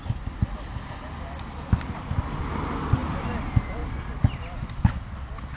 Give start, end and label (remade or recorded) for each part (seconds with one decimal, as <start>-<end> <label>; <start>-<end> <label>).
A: 0.0-5.6 recorded